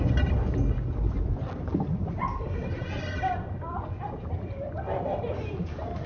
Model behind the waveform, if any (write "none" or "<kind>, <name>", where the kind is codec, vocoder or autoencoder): none